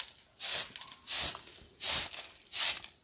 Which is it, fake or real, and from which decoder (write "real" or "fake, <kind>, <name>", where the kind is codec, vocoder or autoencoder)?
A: real